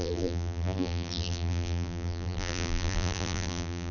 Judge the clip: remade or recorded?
remade